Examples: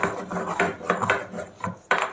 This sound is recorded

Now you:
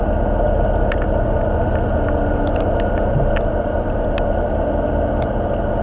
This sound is recorded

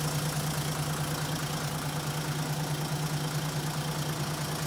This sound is recorded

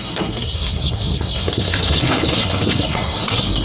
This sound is remade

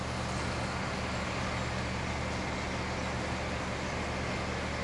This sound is recorded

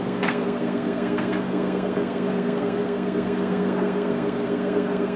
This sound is remade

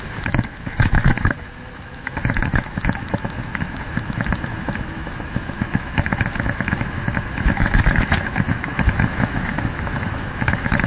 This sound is remade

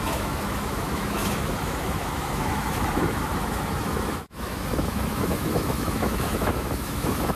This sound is remade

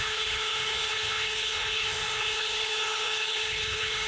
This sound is remade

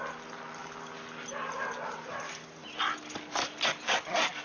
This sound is recorded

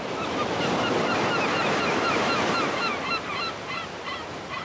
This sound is remade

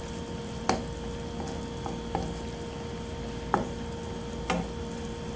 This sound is recorded